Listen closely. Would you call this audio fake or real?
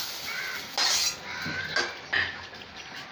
real